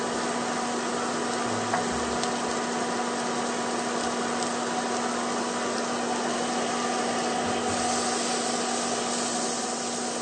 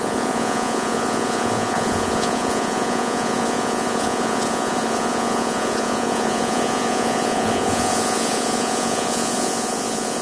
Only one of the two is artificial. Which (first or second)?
second